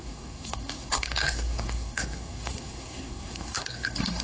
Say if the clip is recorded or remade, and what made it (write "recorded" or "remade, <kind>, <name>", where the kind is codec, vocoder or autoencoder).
remade, codec, SNAC